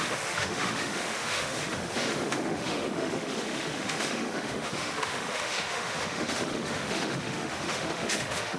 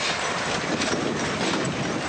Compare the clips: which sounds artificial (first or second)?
first